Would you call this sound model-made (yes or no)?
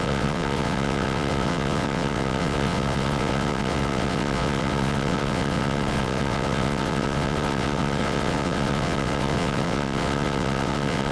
yes